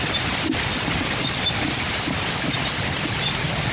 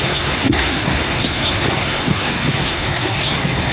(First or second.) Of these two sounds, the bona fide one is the first